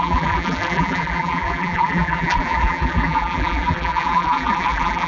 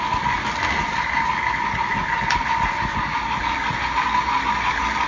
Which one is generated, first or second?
first